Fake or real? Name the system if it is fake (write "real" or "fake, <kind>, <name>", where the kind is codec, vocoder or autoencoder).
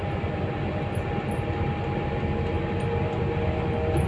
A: real